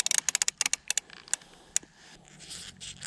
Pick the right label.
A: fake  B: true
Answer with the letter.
B